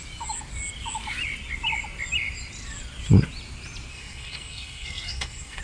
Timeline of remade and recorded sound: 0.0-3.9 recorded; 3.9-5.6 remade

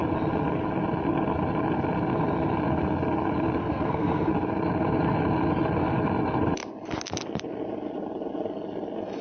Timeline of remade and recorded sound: 0.0-3.6 recorded; 3.6-4.3 remade; 4.3-9.2 recorded

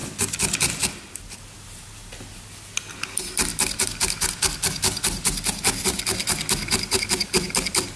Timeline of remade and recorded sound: 0.0-8.0 recorded

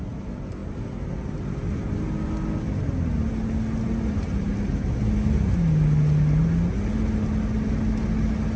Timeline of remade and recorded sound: 0.0-8.6 recorded

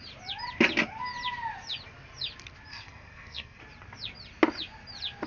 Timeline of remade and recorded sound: 0.0-2.7 recorded; 2.7-3.6 remade; 3.6-5.3 recorded

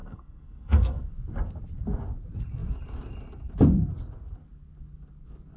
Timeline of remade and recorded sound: 0.0-1.1 remade; 1.1-5.6 recorded